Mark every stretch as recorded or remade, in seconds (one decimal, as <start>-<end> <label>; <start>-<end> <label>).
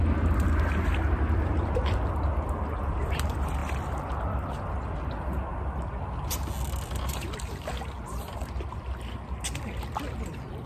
0.0-10.7 recorded